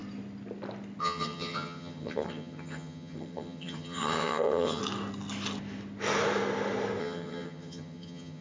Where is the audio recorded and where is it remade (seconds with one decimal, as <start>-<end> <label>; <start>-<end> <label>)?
0.0-1.0 recorded; 1.0-4.8 remade; 4.8-7.0 recorded; 7.0-8.4 remade